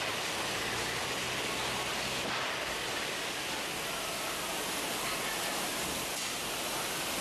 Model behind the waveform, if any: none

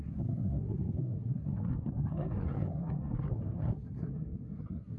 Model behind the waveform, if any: codec, SNAC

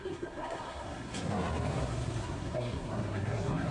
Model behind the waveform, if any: codec, SNAC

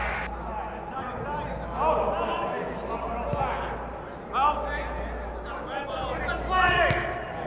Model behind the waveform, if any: none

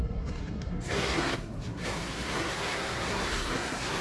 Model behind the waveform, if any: codec, SNAC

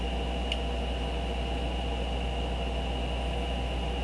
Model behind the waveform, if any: none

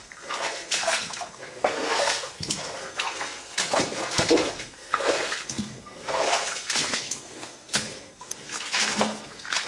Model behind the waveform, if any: codec, SNAC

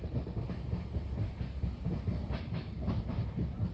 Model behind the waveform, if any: none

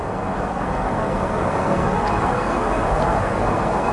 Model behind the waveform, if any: codec, SNAC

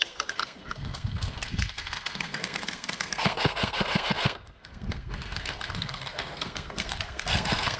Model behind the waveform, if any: codec, SNAC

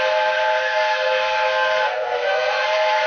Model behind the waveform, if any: codec, SNAC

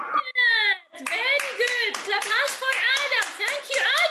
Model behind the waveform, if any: none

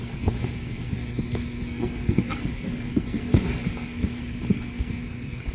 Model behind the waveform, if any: codec, SNAC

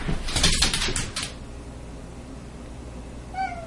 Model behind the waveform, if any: none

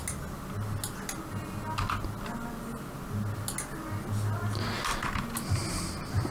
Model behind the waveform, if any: none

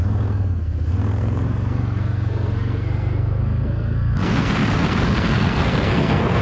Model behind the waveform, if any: codec, SNAC